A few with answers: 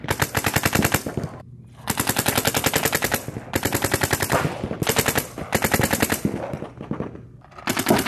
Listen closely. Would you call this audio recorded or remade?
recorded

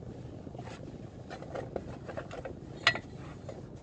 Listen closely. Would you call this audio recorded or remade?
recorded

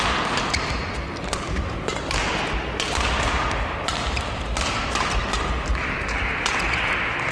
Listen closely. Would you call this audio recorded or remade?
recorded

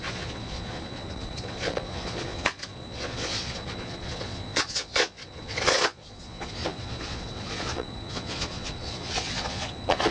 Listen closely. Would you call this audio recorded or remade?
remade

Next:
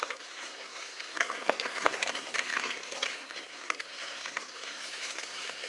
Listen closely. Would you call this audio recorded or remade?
remade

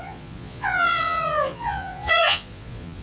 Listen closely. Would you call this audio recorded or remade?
remade